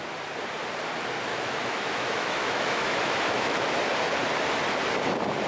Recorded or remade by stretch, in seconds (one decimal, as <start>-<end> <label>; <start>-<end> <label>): 0.0-1.3 recorded; 1.3-3.7 remade; 3.7-5.5 recorded